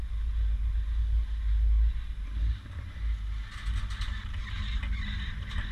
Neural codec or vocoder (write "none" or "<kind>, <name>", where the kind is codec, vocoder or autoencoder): none